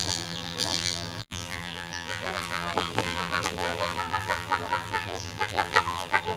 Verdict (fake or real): fake